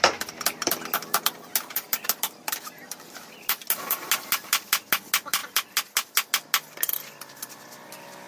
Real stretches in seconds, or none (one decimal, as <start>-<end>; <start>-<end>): 0.0-1.0; 1.5-8.3